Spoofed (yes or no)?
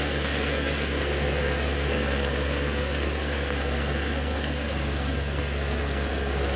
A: yes